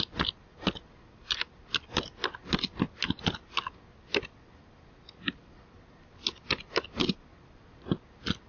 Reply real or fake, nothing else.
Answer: real